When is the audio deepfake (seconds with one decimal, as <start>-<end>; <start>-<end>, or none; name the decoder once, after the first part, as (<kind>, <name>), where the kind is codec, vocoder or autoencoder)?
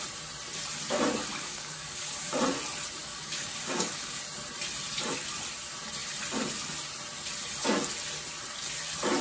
1.3-2.4 (codec, DAC); 3.0-4.2